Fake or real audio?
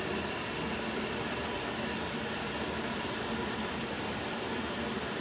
real